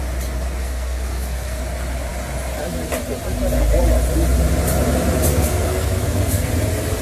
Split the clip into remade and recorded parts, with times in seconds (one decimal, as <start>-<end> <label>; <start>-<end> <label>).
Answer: 0.0-0.6 recorded; 0.6-1.6 remade; 1.6-5.3 recorded; 5.3-6.5 remade; 6.5-7.0 recorded